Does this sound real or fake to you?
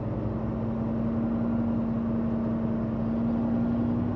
real